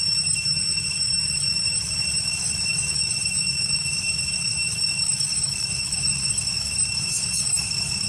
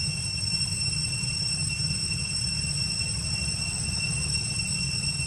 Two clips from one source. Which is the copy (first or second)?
first